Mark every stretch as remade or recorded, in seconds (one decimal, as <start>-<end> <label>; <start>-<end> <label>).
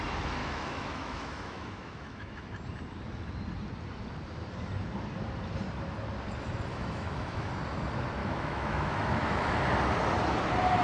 0.0-0.4 recorded; 0.4-2.5 remade; 2.5-6.7 recorded; 6.7-7.5 remade; 7.5-8.2 recorded; 8.2-9.6 remade; 9.6-10.8 recorded